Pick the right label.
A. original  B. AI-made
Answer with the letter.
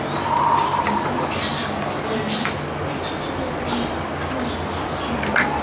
A